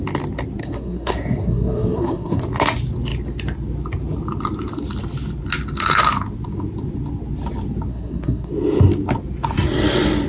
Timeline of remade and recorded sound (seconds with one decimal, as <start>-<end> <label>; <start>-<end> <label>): 0.0-0.6 recorded; 0.6-2.4 remade; 2.4-7.9 recorded; 7.9-8.5 remade; 8.5-10.3 recorded